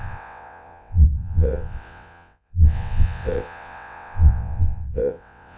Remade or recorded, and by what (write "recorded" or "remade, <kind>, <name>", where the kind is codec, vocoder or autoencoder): remade, vocoder, WaveNeXt